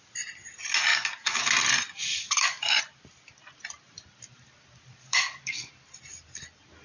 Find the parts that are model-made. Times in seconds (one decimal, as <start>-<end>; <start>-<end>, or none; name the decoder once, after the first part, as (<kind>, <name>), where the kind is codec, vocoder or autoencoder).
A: 0.9-1.4 (codec, DAC); 2.1-2.8; 5.0-5.7

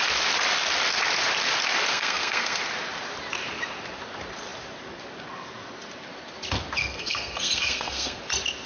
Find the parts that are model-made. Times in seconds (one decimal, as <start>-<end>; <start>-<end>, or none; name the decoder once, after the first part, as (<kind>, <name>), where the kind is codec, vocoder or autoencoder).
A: 1.9-2.6 (codec, SNAC); 6.8-8.2